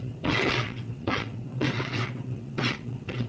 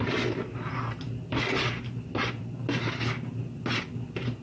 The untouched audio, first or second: second